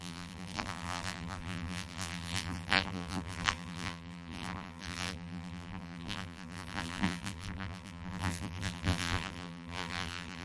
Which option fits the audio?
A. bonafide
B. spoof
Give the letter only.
B